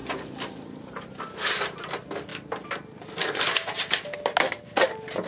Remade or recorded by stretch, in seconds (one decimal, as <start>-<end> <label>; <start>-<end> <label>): 0.0-5.3 recorded